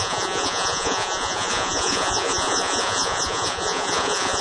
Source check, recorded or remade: remade